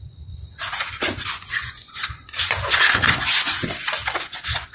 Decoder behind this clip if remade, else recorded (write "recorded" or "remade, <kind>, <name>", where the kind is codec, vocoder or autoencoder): remade, vocoder, Vocos